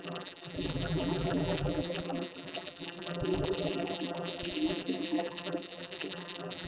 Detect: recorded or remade remade